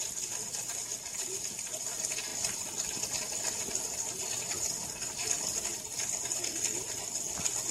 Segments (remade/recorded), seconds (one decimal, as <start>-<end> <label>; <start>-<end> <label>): 0.0-7.7 recorded